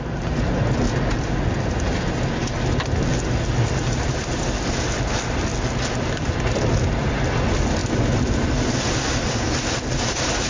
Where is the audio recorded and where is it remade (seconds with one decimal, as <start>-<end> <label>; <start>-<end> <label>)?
0.0-10.5 recorded